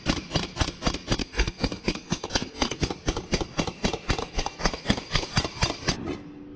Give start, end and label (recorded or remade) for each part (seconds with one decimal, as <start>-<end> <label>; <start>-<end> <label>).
0.0-1.2 recorded; 1.2-2.8 remade; 2.8-4.2 recorded; 4.2-5.3 remade; 5.3-6.6 recorded